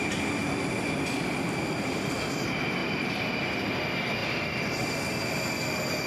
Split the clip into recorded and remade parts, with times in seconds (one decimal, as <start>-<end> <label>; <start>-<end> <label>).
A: 0.0-0.4 recorded; 0.4-2.1 remade; 2.1-2.8 recorded; 2.8-3.3 remade; 3.3-4.2 recorded; 4.2-5.0 remade; 5.0-6.1 recorded